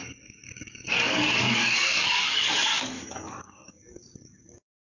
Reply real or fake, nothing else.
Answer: fake